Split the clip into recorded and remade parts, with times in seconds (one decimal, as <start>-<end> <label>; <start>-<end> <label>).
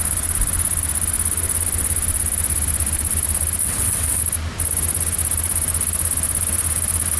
0.0-3.6 recorded; 3.6-4.2 remade; 4.2-7.2 recorded